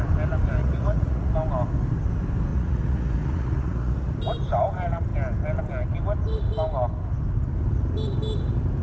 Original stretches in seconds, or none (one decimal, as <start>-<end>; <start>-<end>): 0.0-0.6; 1.3-2.5; 4.1-8.8